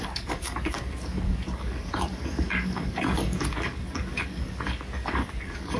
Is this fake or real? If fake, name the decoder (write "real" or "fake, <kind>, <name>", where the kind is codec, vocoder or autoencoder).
fake, codec, DAC